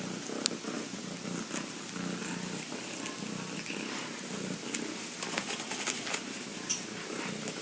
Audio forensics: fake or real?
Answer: real